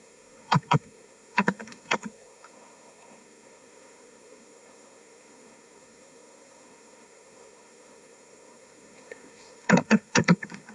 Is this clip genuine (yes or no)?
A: no